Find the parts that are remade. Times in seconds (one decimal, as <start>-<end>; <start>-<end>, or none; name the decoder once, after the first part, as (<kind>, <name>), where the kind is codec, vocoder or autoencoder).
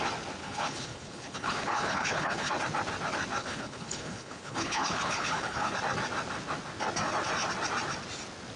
0.4-2.5 (codec, HILCodec); 3.4-5.7